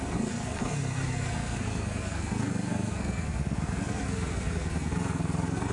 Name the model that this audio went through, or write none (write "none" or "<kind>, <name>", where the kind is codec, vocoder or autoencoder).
codec, SNAC